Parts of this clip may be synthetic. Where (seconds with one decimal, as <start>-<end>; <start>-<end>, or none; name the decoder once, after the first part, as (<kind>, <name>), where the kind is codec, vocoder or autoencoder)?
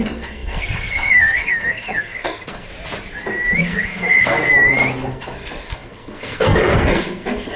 0.0-2.7 (codec, SNAC); 3.6-4.5; 5.1-7.6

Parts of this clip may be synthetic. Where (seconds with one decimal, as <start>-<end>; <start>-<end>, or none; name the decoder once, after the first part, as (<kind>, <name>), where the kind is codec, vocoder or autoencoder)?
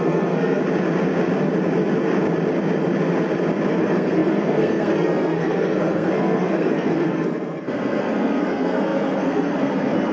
0.0-0.6 (codec, SNAC); 3.7-10.1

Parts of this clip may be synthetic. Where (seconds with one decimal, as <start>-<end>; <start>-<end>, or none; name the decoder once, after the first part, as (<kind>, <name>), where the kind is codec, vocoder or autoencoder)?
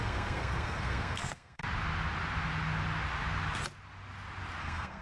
0.0-1.6 (codec, SNAC); 4.6-5.0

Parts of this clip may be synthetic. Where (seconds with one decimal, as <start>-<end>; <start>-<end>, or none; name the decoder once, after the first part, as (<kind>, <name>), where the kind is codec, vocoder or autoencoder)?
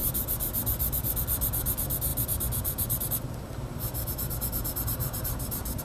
none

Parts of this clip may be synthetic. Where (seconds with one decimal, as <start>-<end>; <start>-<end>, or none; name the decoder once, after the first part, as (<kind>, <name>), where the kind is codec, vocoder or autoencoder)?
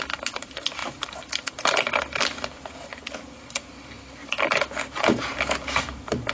none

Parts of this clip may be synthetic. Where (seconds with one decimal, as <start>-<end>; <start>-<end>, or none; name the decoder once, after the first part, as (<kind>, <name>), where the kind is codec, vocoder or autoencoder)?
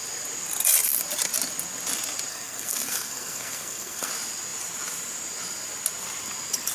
2.3-4.1 (codec, SNAC)